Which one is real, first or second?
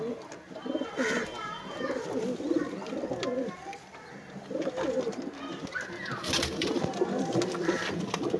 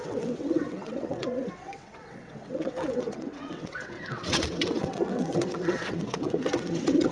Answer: first